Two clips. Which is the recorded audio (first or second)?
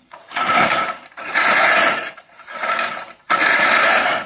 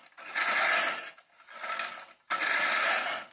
second